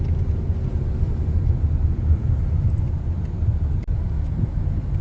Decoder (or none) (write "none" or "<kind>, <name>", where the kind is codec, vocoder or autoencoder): none